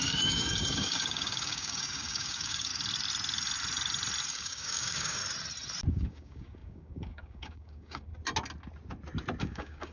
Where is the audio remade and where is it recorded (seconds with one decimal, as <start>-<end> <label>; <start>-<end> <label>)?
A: 0.0-2.7 remade; 2.7-4.3 recorded; 4.3-5.2 remade; 5.2-5.9 recorded; 5.9-8.1 remade; 8.1-9.4 recorded; 9.4-9.9 remade